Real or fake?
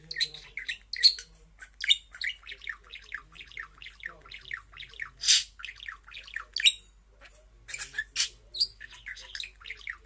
real